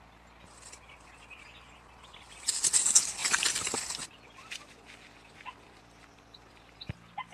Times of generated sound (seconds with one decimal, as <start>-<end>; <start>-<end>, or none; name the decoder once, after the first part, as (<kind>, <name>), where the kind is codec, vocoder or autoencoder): none